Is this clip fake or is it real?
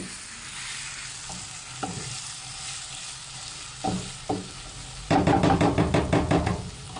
real